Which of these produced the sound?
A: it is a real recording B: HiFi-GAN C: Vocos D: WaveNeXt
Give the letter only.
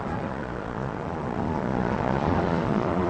C